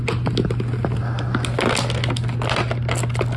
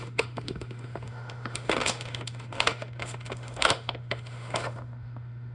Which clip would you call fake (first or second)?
second